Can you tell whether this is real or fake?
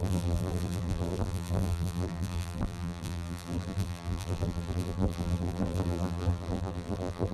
fake